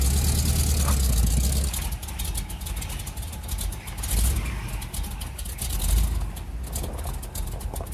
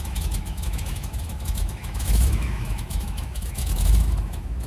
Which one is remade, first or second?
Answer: second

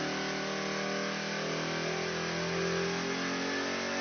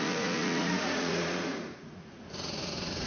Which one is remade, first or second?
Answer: second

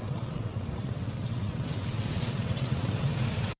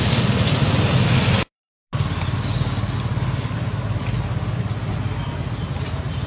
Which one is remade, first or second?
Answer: first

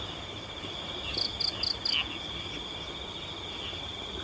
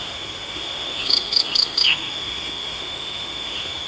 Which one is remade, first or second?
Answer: second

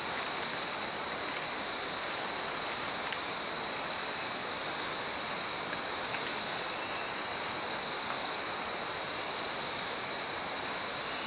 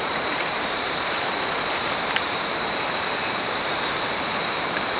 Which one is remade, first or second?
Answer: second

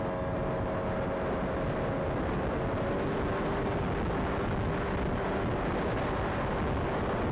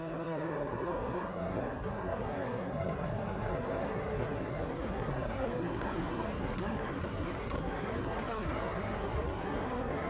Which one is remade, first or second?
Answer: second